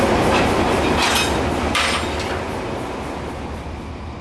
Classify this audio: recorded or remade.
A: recorded